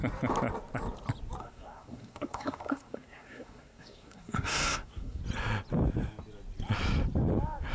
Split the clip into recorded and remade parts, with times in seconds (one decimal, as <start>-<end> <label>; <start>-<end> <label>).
0.0-1.4 recorded; 1.4-5.2 remade; 5.2-7.7 recorded